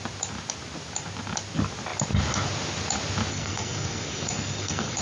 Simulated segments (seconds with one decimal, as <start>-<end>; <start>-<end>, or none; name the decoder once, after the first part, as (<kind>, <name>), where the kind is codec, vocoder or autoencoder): 3.3-5.0 (codec, SNAC)